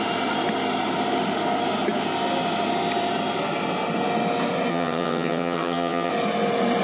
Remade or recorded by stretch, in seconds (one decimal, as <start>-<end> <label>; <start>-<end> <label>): 0.0-4.7 recorded; 4.7-6.1 remade; 6.1-6.8 recorded